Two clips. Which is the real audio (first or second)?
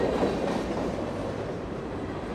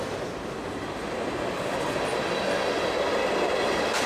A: second